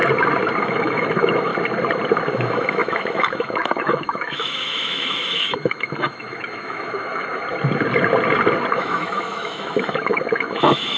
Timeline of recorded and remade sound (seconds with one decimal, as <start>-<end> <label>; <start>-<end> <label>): 0.0-0.6 recorded; 0.6-1.5 remade; 1.5-2.3 recorded; 2.3-7.4 remade; 7.4-8.7 recorded; 8.7-11.0 remade